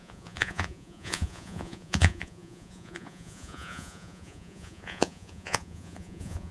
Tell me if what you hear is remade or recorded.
remade